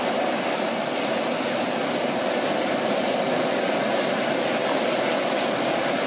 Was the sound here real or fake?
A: real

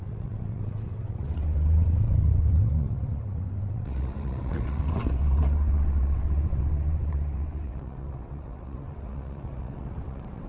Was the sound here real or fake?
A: fake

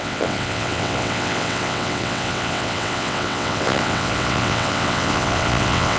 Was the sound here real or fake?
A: fake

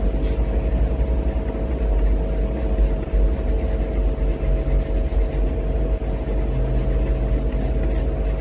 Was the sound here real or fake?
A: real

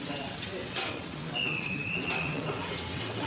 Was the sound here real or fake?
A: fake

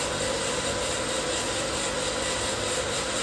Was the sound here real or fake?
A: real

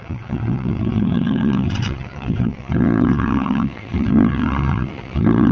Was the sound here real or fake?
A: fake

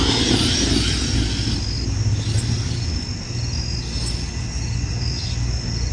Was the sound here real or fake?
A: real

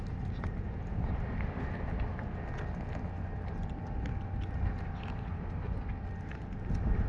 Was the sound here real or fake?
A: real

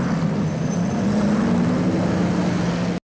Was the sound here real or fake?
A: real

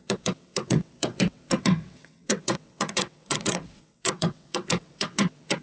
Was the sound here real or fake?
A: fake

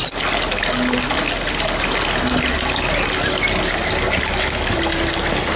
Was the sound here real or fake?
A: real